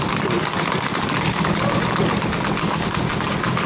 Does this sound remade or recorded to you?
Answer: recorded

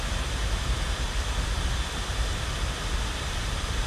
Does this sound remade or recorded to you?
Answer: remade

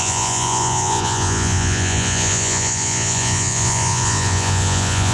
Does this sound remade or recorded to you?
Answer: remade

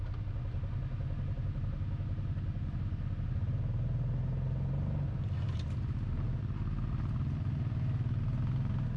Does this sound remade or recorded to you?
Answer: recorded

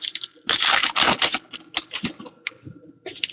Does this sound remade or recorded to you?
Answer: recorded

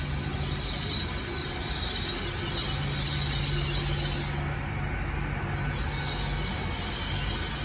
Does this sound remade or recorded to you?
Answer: recorded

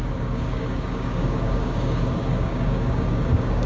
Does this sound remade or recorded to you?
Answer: remade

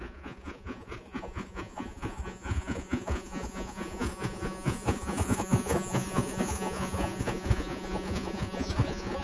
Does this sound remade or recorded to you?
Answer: remade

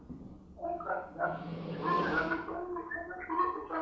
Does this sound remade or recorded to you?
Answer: recorded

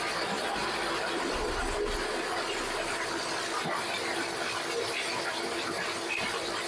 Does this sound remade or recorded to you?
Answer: recorded